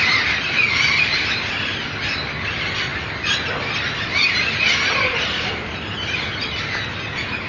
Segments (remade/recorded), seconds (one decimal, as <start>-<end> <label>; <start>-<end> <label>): 0.0-7.5 recorded